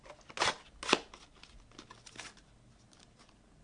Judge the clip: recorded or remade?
recorded